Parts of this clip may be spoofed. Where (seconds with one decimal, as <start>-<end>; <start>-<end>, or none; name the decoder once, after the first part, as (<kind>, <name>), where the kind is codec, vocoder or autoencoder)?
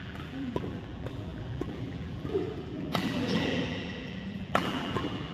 0.0-5.3 (vocoder, BigVGAN v2)